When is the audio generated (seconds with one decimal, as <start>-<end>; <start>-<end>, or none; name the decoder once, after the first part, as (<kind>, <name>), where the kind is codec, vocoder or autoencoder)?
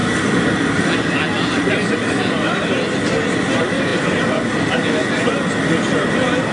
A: none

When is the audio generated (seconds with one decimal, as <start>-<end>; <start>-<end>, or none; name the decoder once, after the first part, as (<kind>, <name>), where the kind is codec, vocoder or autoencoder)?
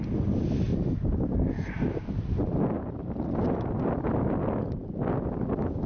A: none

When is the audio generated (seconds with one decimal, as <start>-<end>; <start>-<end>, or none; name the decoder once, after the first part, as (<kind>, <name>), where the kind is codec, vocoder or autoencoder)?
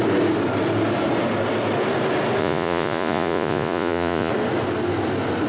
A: 2.4-4.3 (vocoder, Vocos)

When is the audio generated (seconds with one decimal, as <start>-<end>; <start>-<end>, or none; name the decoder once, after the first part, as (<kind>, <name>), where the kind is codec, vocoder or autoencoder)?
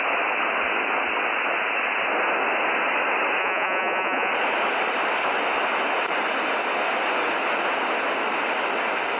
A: 3.4-4.3 (vocoder, Vocos)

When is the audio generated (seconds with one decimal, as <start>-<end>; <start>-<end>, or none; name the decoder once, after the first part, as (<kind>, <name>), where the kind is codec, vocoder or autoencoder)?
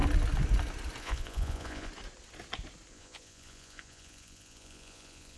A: 1.0-1.9 (vocoder, Vocos); 2.9-5.4